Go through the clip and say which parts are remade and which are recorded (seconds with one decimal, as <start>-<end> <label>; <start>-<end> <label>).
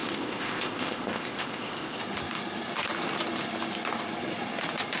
0.0-2.0 remade; 2.0-5.0 recorded